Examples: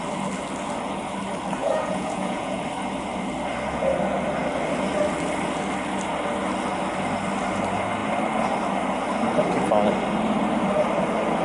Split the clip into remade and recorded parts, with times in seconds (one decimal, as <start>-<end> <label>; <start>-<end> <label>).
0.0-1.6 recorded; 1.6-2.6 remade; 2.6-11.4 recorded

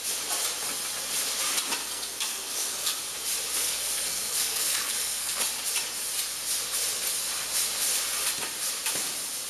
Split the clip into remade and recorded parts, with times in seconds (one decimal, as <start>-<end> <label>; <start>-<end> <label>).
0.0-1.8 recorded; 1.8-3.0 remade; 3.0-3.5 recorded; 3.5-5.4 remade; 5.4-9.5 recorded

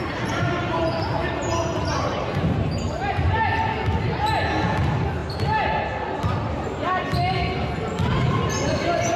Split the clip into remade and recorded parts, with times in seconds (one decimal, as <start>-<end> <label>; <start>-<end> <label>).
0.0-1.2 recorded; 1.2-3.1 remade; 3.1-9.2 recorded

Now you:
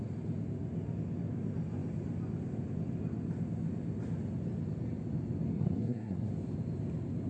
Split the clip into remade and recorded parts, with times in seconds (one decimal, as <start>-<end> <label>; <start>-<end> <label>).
0.0-5.5 recorded; 5.5-6.3 remade; 6.3-7.3 recorded

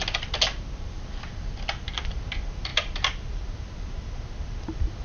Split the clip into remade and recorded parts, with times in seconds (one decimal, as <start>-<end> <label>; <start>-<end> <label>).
0.0-5.0 recorded

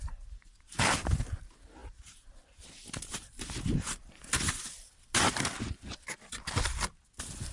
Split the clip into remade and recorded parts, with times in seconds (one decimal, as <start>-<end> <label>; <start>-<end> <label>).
0.0-7.5 recorded

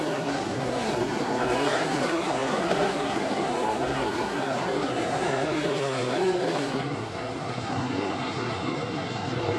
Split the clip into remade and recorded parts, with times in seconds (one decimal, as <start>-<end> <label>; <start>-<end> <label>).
0.0-9.6 remade

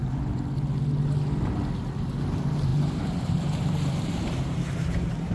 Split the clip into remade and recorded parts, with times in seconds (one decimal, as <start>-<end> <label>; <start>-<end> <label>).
0.0-2.0 recorded; 2.0-5.3 remade